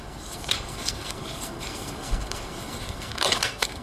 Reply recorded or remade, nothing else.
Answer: remade